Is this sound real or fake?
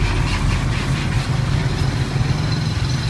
real